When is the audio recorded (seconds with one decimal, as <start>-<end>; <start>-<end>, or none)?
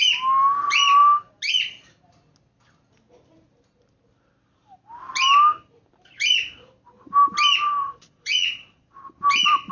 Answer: 0.0-7.8; 9.0-9.7